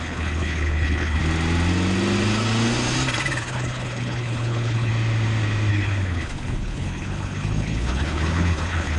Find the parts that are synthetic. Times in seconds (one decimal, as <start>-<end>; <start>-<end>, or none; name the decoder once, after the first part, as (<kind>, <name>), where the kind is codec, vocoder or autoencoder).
0.0-1.2 (codec, HILCodec); 3.4-4.9; 5.7-9.0